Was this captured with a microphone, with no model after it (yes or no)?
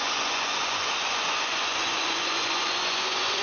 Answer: no